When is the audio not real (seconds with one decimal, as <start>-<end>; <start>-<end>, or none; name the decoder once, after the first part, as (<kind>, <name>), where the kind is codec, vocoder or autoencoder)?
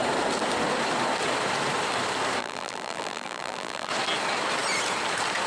2.4-3.9 (vocoder, BigVGAN v2)